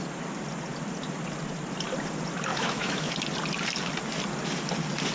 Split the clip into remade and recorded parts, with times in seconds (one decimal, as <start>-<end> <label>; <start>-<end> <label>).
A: 0.0-2.5 recorded; 2.5-3.1 remade; 3.1-5.1 recorded